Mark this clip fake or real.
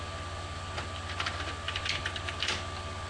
real